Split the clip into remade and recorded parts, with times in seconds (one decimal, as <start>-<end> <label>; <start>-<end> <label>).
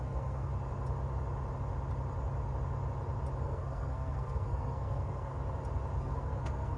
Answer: 0.0-0.5 remade; 0.5-3.4 recorded; 3.4-5.3 remade; 5.3-6.0 recorded; 6.0-6.8 remade